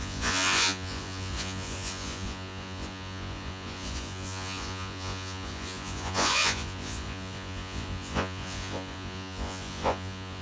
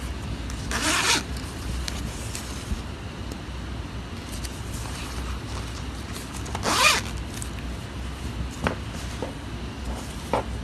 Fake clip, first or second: first